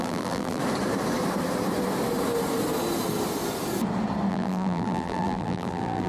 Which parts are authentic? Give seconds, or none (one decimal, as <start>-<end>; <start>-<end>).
0.6-4.3